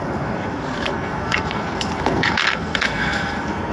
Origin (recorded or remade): remade